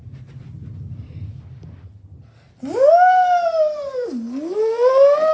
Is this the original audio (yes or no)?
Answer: yes